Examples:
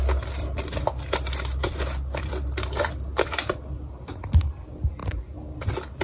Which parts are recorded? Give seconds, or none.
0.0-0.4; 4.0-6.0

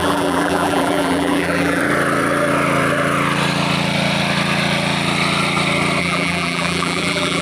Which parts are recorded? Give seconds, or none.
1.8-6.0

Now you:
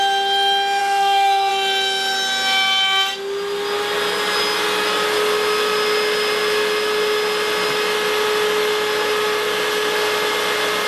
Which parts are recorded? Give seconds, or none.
0.0-0.8; 1.5-10.9

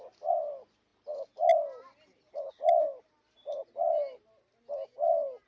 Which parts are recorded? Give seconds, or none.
0.0-5.5

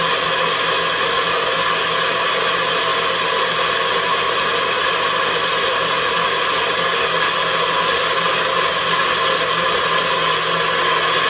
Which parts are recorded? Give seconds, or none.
0.0-11.3